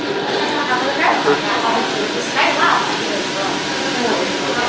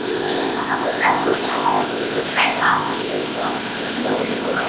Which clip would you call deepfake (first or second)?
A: second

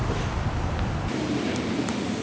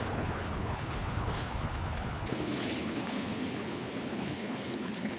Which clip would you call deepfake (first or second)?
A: second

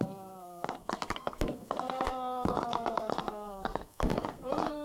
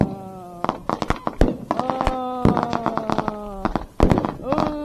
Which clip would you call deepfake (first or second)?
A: first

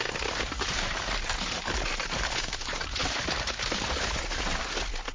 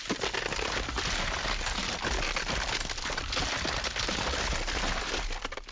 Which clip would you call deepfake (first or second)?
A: first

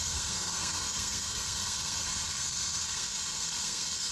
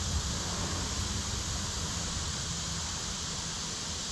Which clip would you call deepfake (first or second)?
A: first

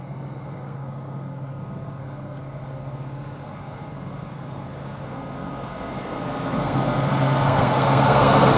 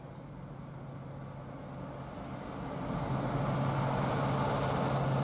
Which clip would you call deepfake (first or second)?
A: first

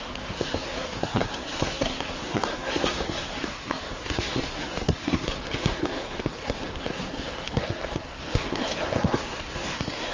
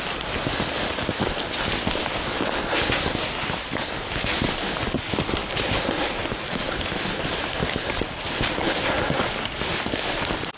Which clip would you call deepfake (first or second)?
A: first